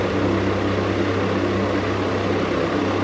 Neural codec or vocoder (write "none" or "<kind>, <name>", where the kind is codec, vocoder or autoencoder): none